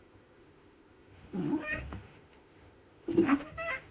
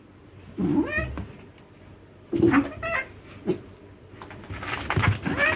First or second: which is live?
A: second